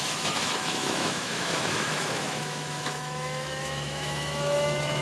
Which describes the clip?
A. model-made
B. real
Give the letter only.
A